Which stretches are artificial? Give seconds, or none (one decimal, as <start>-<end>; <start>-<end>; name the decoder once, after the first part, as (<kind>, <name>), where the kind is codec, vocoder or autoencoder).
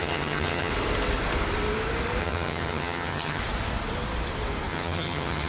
0.0-0.7 (vocoder, HiFi-GAN); 2.2-3.4; 4.7-5.5